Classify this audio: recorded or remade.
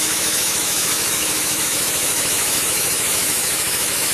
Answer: remade